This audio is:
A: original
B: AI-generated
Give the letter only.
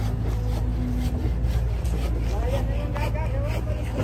A